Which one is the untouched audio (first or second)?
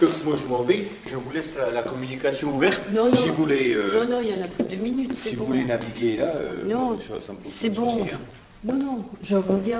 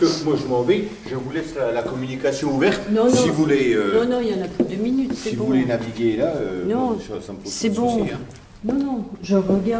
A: second